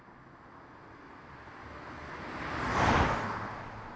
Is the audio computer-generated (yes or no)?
no